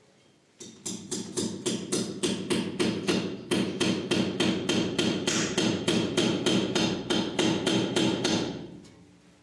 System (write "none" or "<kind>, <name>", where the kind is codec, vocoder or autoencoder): none